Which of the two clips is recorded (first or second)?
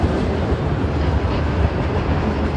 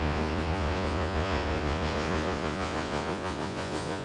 first